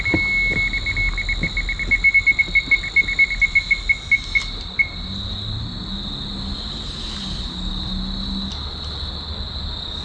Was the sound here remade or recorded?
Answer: recorded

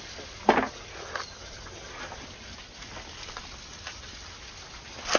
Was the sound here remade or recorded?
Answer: recorded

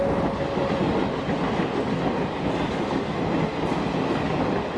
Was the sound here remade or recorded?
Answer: recorded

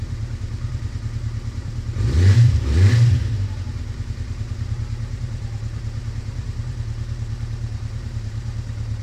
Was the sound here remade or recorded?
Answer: remade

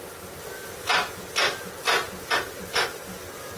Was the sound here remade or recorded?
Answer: recorded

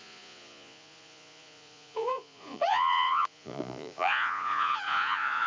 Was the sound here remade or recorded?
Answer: remade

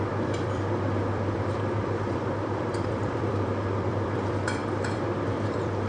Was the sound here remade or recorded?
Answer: remade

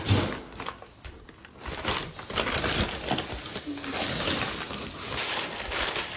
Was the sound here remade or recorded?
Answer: recorded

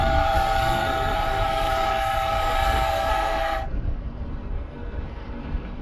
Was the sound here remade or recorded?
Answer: remade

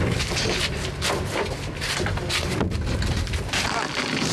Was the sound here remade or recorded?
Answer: recorded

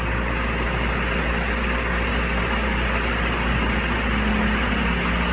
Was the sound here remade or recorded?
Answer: recorded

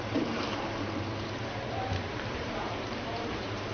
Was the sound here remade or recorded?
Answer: remade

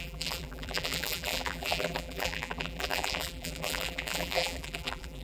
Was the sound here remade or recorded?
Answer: remade